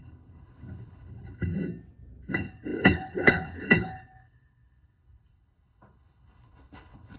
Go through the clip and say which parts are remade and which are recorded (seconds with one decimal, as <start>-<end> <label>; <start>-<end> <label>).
0.0-1.5 remade; 1.5-2.3 recorded; 2.3-7.2 remade